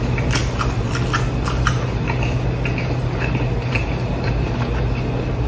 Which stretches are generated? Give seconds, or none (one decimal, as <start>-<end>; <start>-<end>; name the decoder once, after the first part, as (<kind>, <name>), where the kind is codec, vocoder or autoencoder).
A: none